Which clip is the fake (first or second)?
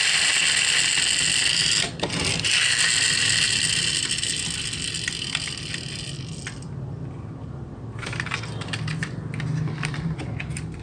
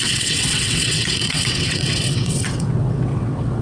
second